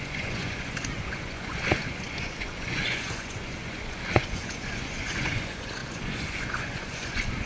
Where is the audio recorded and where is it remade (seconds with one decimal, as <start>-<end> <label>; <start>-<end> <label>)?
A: 0.0-7.5 remade